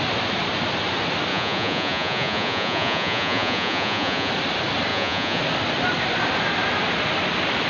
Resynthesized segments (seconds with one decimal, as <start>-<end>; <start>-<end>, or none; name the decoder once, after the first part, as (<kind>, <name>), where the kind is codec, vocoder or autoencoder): 1.3-4.3 (vocoder, Vocos); 4.9-5.4